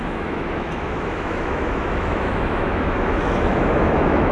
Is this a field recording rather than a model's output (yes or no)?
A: no